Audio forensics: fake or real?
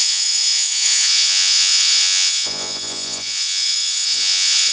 fake